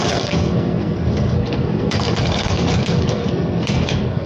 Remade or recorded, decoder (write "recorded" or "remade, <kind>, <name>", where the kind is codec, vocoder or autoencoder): remade, codec, SNAC